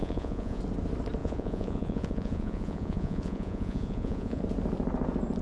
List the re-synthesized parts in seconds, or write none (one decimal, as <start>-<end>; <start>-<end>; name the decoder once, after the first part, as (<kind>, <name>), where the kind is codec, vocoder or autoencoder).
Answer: 0.0-0.6 (vocoder, Vocos); 1.2-4.4